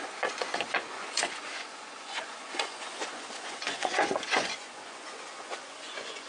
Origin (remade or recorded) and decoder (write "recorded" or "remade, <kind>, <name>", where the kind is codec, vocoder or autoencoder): remade, vocoder, Vocos